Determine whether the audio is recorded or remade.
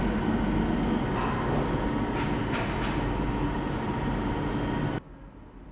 recorded